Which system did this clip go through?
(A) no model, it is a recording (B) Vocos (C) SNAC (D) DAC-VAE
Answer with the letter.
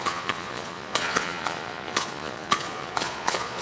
B